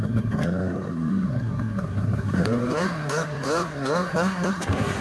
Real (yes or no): no